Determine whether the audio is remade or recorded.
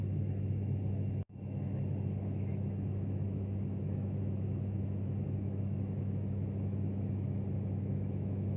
remade